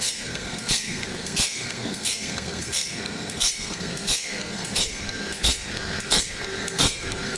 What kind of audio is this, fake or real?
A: fake